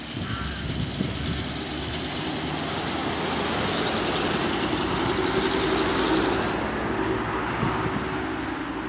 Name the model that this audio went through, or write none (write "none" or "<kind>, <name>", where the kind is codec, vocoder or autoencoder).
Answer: none